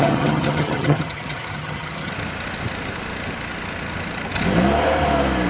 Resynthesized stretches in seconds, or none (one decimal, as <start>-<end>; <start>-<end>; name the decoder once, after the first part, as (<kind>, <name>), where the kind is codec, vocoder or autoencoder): 0.0-2.1 (vocoder, HiFi-GAN)